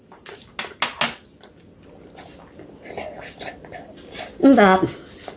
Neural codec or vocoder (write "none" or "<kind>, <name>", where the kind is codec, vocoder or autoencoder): none